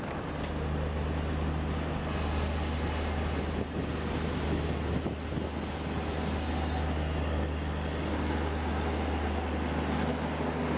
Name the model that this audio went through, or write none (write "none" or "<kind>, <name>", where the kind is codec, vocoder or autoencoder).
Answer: none